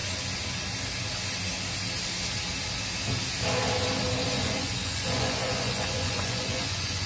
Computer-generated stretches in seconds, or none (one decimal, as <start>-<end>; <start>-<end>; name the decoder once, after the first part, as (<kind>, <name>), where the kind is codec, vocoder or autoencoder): 4.3-7.1 (vocoder, Vocos)